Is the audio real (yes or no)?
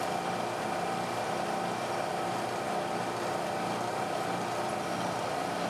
yes